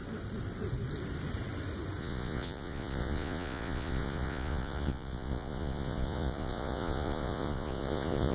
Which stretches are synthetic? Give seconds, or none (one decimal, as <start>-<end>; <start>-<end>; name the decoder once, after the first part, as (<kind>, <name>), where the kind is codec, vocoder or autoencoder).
2.0-8.3 (vocoder, Vocos)

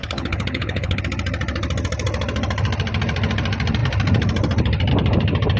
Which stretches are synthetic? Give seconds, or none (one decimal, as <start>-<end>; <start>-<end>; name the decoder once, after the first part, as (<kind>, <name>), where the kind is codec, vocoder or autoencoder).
0.0-1.0 (codec, HILCodec)

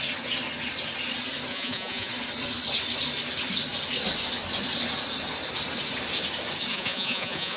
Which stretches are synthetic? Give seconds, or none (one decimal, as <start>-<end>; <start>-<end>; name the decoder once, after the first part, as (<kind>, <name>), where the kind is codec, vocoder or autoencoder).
1.5-2.1 (vocoder, Vocos); 6.7-7.6

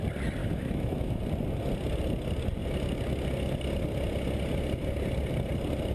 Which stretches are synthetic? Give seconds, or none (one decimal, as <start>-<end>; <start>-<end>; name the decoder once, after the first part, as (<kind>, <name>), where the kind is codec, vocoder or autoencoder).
0.4-1.2 (autoencoder, DAC-VAE)

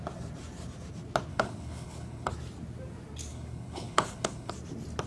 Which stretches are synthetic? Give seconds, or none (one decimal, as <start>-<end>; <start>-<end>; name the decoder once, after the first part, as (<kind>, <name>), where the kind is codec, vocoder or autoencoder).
1.3-2.3 (codec, HILCodec); 3.3-4.5

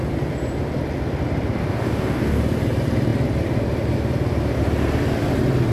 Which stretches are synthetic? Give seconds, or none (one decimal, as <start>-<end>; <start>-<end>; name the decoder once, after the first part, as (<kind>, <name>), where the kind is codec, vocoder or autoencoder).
1.6-2.4 (codec, DAC)

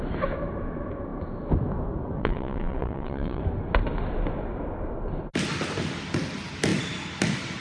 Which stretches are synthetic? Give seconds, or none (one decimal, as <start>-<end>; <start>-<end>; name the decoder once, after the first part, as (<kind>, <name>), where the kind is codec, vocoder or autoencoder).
2.2-3.4 (vocoder, WaveNeXt)